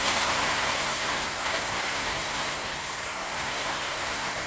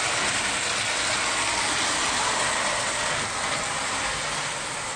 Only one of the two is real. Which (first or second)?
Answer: second